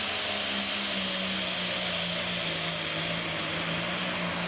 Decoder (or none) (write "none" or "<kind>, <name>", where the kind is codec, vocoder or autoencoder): none